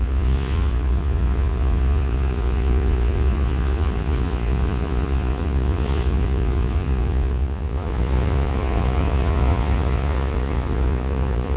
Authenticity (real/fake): fake